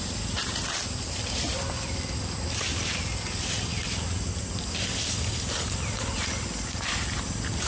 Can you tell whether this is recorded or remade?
recorded